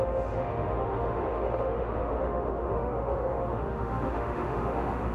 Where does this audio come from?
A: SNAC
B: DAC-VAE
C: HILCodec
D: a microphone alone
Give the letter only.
B